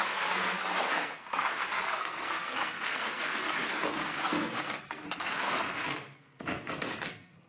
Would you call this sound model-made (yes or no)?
yes